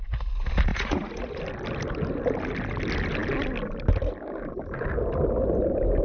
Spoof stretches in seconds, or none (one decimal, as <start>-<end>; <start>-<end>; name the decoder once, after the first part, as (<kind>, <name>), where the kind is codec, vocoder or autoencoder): 0.7-1.4 (vocoder, Vocos)